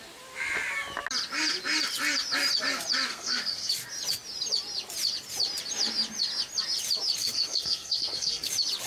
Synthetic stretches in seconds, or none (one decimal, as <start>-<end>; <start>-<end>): 3.1-3.7; 7.2-8.5